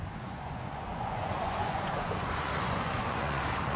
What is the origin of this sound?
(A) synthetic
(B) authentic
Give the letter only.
A